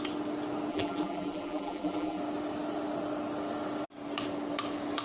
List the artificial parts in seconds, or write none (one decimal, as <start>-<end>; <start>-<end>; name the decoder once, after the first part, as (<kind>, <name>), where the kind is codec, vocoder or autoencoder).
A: 0.7-2.2 (vocoder, BigVGAN v2)